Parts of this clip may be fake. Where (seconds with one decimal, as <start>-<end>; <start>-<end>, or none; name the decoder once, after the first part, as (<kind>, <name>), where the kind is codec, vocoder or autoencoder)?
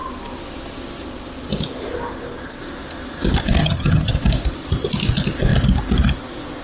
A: 3.6-4.1 (vocoder, HiFi-GAN)